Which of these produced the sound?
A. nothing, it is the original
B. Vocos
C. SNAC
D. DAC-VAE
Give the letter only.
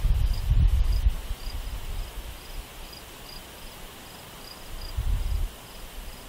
A